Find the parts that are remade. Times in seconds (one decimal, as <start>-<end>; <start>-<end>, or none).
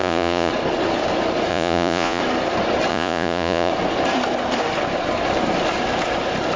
0.0-0.5; 1.5-2.2; 2.9-3.7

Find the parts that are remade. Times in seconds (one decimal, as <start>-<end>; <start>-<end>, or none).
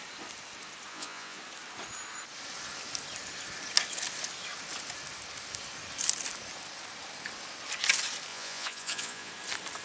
0.9-1.4; 8.3-9.3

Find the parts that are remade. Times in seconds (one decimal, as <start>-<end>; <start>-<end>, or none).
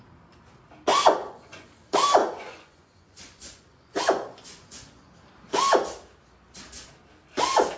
0.9-1.7; 2.2-5.1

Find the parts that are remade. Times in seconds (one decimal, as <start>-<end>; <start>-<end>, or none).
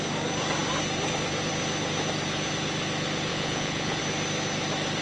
3.3-4.0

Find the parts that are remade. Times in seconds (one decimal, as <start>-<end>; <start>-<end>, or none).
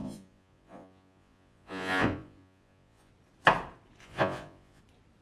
0.0-3.1; 4.0-4.8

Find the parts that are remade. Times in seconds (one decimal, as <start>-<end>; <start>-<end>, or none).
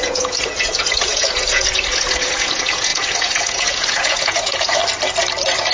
0.0-4.8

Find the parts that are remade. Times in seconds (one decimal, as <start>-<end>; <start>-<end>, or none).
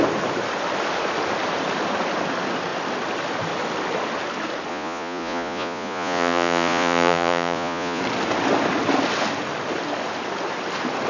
4.7-8.0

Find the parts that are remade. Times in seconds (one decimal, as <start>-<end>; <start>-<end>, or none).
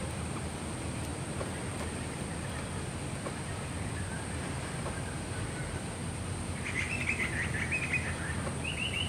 none